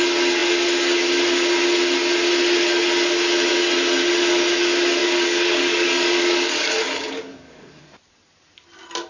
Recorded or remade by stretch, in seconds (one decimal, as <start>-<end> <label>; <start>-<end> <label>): 0.0-5.0 recorded; 5.0-7.8 remade; 7.8-9.1 recorded